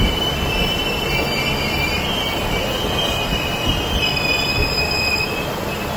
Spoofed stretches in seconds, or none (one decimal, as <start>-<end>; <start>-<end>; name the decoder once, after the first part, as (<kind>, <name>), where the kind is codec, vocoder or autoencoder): 0.0-0.8 (vocoder, BigVGAN v2); 1.8-3.3; 3.9-4.5; 5.0-6.0